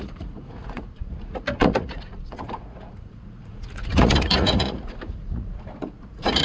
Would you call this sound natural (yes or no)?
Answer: no